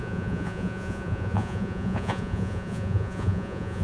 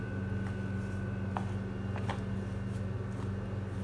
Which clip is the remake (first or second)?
first